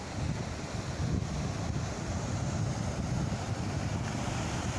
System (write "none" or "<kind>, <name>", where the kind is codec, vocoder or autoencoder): none